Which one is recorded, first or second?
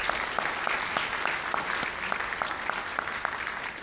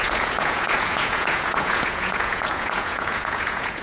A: first